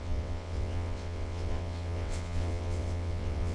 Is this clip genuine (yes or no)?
no